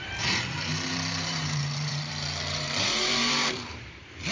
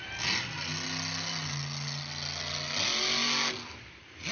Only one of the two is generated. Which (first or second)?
first